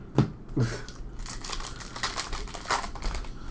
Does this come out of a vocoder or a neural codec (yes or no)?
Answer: no